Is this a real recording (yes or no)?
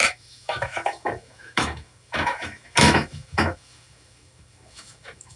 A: no